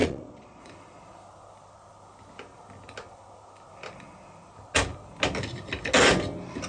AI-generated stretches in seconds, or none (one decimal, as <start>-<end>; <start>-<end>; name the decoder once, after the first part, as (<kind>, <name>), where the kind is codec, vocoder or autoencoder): 0.0-0.6 (vocoder, Vocos)